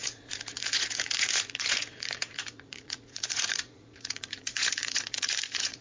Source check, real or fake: fake